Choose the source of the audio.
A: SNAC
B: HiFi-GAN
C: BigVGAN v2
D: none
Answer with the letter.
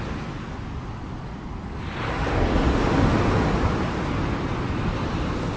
D